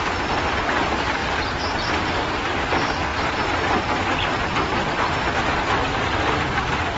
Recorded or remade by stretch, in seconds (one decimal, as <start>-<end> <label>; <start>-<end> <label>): 0.0-7.0 recorded